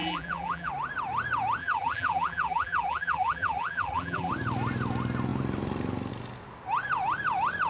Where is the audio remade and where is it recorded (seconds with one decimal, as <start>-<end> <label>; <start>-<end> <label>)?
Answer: 0.0-0.7 remade; 0.7-1.6 recorded; 1.6-4.3 remade; 4.3-7.7 recorded